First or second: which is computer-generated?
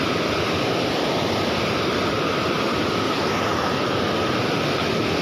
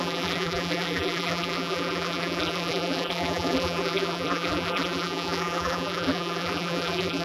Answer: second